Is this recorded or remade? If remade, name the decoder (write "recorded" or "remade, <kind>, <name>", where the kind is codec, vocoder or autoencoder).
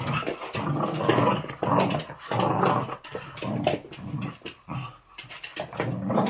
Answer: recorded